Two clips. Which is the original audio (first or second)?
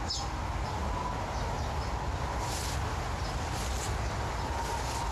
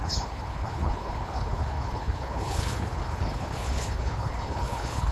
first